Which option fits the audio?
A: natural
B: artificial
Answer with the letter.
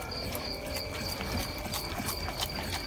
A